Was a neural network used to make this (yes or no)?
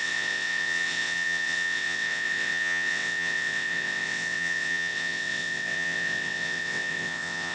yes